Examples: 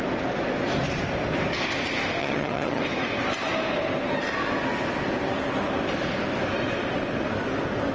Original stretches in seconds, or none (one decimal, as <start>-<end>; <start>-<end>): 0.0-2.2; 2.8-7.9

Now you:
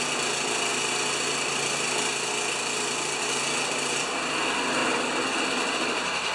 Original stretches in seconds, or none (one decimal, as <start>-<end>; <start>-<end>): 0.0-6.3

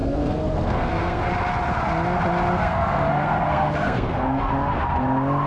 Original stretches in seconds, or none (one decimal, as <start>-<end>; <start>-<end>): 1.2-2.6; 4.5-5.5

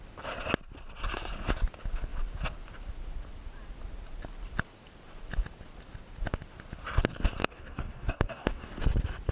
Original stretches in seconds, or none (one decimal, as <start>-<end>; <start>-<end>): 0.0-7.4; 8.8-9.3

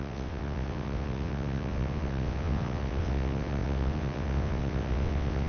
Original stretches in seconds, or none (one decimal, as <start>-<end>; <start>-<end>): none

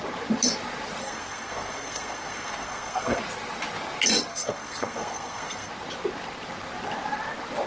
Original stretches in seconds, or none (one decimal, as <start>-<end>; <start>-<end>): 0.0-1.0; 3.2-4.3; 5.7-7.7